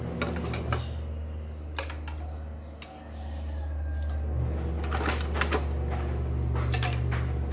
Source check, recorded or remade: recorded